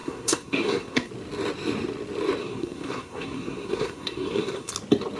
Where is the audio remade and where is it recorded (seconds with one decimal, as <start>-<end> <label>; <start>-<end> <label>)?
0.0-1.1 remade; 1.1-2.4 recorded; 2.4-4.7 remade; 4.7-5.2 recorded

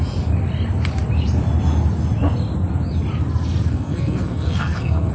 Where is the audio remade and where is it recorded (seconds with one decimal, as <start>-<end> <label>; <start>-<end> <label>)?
0.0-3.7 recorded; 3.7-5.1 remade

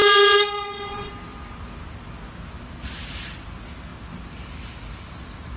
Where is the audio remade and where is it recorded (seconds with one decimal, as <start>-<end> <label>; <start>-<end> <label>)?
0.0-1.1 remade; 1.1-5.6 recorded

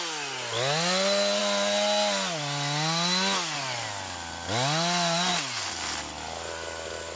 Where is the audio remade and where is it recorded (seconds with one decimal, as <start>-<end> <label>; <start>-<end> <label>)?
0.0-7.2 recorded

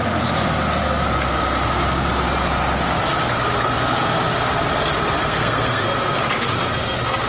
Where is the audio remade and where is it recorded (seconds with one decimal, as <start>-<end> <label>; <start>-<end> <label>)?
0.0-5.2 recorded; 5.2-5.8 remade; 5.8-7.3 recorded

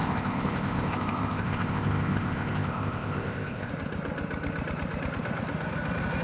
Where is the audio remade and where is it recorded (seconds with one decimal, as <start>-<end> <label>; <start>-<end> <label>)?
0.0-3.7 remade; 3.7-6.2 recorded

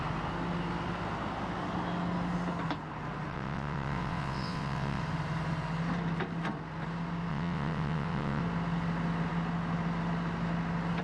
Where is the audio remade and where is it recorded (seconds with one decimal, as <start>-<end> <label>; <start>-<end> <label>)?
0.0-3.3 recorded; 3.3-5.0 remade; 5.0-7.3 recorded; 7.3-8.4 remade; 8.4-11.0 recorded

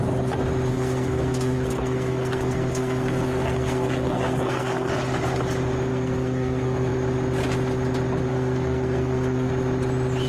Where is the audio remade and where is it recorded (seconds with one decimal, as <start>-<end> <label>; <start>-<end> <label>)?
0.0-0.7 recorded; 0.7-4.9 remade; 4.9-5.9 recorded; 5.9-6.9 remade; 6.9-8.3 recorded; 8.3-9.5 remade; 9.5-10.3 recorded